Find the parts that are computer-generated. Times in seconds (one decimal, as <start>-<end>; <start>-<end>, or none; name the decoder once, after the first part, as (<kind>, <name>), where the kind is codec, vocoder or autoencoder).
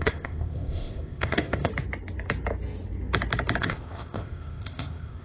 0.0-1.7 (codec, ZipCodec); 3.6-5.2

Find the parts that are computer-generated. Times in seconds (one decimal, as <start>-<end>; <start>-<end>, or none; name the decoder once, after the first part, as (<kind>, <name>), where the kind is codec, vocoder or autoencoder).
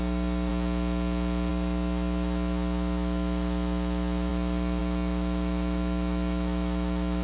0.0-0.5 (autoencoder, DAC-VAE); 1.5-7.2